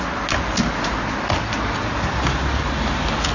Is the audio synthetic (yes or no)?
no